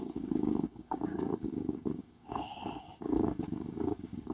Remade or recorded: remade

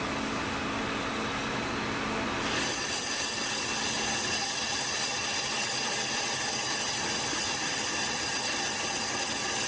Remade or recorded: recorded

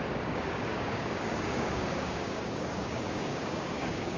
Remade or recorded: remade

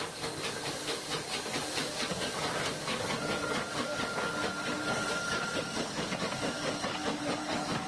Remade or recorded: remade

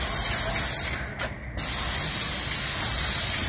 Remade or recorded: recorded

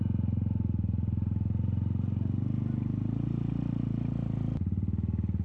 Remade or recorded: recorded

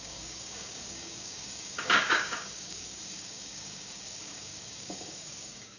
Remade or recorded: remade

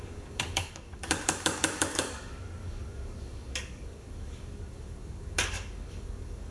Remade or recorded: remade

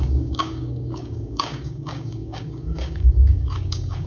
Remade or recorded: remade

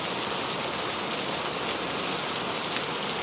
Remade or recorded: recorded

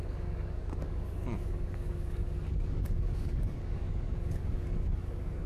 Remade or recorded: remade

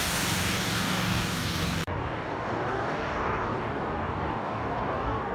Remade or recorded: remade